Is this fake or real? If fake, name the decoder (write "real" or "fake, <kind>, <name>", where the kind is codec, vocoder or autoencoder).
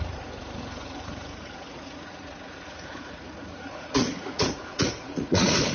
fake, vocoder, Vocos